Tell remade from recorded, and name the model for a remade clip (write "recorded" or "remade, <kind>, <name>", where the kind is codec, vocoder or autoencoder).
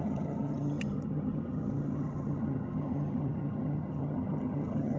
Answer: remade, vocoder, HiFi-GAN